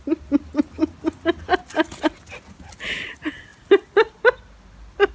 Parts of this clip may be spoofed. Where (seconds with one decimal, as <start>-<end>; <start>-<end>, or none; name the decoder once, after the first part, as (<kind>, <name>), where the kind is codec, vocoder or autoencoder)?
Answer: none